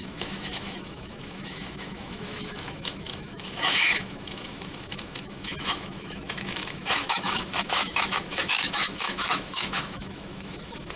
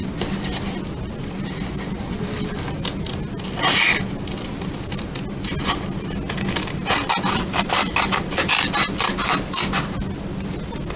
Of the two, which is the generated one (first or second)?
first